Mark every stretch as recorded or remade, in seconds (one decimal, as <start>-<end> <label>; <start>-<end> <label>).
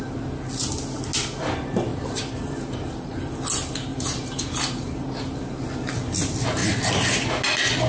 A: 0.0-1.9 recorded; 1.9-3.1 remade; 3.1-3.9 recorded; 3.9-4.8 remade; 4.8-7.9 recorded